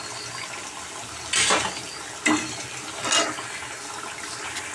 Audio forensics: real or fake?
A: real